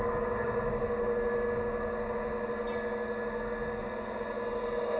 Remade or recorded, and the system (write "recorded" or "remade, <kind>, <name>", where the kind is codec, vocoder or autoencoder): recorded